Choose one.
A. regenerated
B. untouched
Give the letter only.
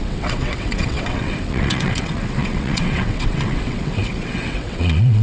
A